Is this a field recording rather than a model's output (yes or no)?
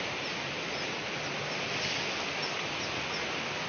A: yes